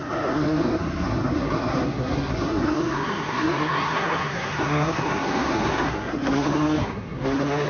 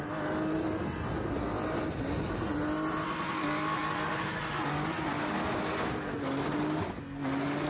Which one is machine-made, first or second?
first